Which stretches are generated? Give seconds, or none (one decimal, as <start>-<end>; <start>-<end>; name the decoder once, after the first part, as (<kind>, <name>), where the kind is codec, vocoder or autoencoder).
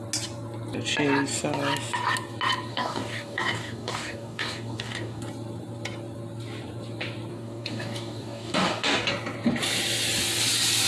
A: 2.7-5.2 (codec, DAC); 7.3-9.1